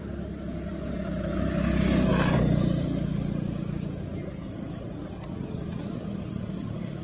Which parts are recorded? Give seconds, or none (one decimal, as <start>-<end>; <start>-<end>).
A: 0.0-7.0